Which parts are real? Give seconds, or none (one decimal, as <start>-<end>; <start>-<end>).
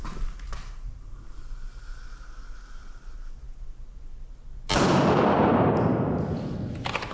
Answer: 0.0-7.1